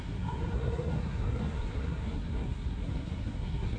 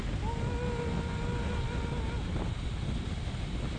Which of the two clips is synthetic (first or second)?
first